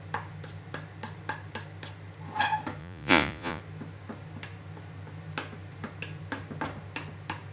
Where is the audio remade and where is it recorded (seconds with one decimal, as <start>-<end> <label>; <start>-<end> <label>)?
0.0-2.8 recorded; 2.8-3.6 remade; 3.6-7.5 recorded